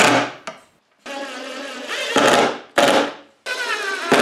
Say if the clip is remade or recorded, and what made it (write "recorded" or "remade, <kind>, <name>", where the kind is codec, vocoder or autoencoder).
recorded